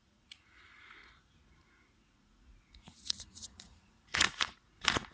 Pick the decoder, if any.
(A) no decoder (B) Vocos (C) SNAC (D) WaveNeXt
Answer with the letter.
B